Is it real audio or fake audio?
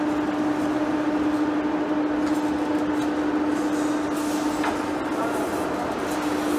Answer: real